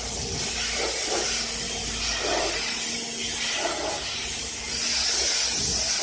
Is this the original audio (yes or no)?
yes